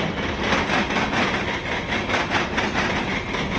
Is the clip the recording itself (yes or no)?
yes